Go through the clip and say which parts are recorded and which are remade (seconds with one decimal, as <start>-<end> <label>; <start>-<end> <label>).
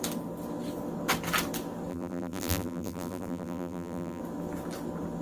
0.0-1.9 recorded; 1.9-4.2 remade; 4.2-5.2 recorded